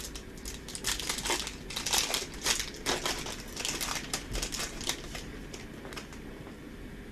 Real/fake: real